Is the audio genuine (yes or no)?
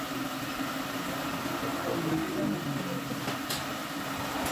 yes